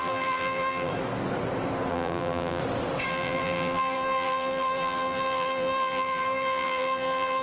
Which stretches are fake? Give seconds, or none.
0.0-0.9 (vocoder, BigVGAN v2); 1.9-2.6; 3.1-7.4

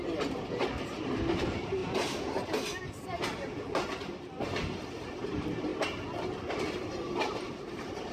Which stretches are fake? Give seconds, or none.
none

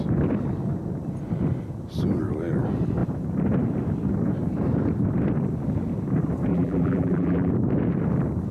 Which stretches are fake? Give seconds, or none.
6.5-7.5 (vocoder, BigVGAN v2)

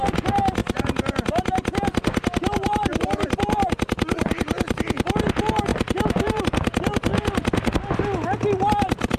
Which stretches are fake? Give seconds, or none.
5.7-6.4 (vocoder, BigVGAN v2)

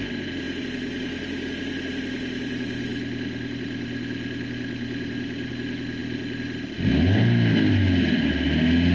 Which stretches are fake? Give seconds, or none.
none

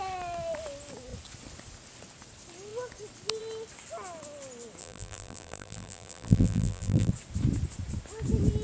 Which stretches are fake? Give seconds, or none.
4.8-7.1 (vocoder, BigVGAN v2)

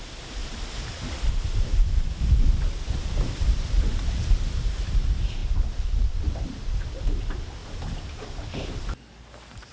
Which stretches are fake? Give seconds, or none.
0.0-7.6 (vocoder, BigVGAN v2); 8.2-9.7

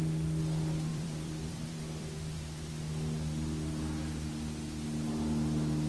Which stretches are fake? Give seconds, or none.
0.9-2.7 (vocoder, BigVGAN v2)